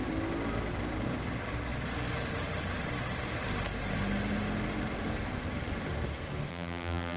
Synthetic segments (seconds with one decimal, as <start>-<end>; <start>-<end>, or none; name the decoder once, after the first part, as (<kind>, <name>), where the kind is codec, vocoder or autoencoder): 6.5-7.2 (vocoder, BigVGAN v2)